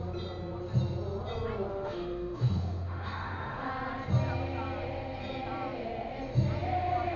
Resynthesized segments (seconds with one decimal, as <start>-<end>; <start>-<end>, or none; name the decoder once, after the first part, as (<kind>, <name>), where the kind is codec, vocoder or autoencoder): 1.7-3.7 (autoencoder, DAC-VAE)